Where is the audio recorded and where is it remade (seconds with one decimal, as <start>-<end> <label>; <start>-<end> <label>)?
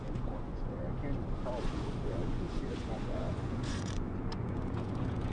0.0-0.8 remade; 0.8-1.6 recorded; 1.6-5.3 remade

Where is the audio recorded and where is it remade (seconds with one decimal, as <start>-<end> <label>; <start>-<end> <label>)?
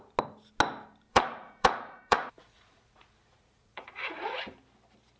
0.0-1.1 recorded; 1.1-4.2 remade; 4.2-5.2 recorded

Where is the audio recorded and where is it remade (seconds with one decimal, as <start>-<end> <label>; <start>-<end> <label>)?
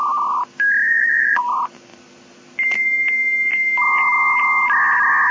0.0-0.9 recorded; 0.9-1.5 remade; 1.5-5.3 recorded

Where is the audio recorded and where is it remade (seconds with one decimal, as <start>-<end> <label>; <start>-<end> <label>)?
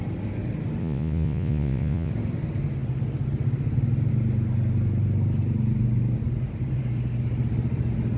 0.0-0.8 recorded; 0.8-2.1 remade; 2.1-8.2 recorded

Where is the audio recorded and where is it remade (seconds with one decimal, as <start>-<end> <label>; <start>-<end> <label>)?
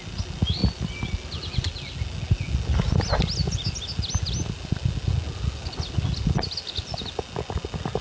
0.0-8.0 recorded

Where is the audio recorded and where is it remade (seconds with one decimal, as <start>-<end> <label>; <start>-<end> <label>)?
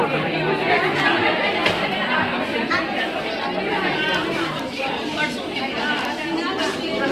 0.0-7.1 recorded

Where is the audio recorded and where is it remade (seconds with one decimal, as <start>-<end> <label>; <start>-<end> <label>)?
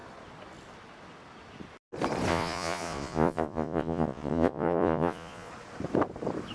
0.0-2.3 recorded; 2.3-5.5 remade; 5.5-6.5 recorded